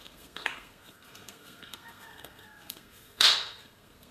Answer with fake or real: fake